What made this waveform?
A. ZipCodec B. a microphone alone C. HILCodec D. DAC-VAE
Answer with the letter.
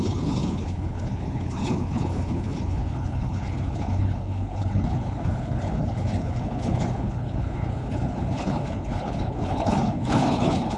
C